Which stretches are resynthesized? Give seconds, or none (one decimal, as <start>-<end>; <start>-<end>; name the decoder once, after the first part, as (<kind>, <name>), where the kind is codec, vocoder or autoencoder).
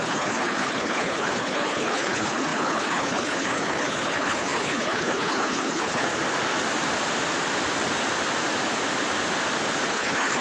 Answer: 0.0-6.1 (codec, HILCodec); 9.9-10.4